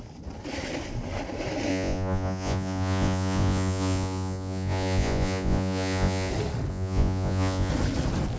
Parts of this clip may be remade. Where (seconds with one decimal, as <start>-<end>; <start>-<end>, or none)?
1.7-6.3; 6.7-7.7

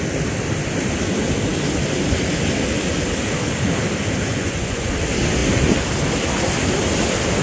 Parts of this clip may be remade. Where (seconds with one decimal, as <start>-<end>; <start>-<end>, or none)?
4.3-4.9

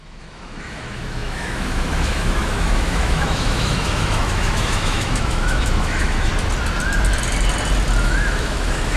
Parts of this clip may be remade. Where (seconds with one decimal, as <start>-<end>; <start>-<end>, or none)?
0.0-6.3; 8.0-9.0

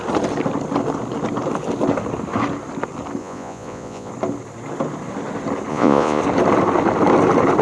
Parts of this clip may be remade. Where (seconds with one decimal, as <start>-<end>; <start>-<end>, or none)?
3.2-4.1; 5.7-6.2

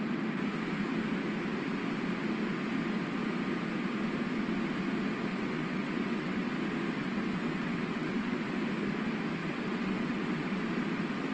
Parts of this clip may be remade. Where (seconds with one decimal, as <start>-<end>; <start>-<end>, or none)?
5.3-6.5; 7.0-8.6; 9.4-10.6

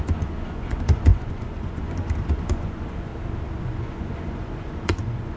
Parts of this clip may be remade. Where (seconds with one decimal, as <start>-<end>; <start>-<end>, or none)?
0.0-3.1; 3.6-5.4

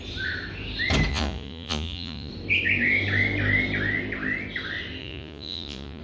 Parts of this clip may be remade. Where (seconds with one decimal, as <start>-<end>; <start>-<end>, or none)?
1.1-2.3; 5.0-6.0